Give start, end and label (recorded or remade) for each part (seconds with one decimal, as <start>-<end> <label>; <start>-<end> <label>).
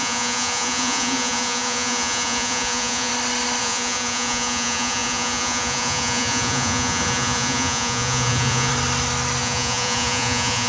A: 0.0-3.1 remade; 3.1-3.6 recorded; 3.6-8.7 remade; 8.7-9.4 recorded; 9.4-10.7 remade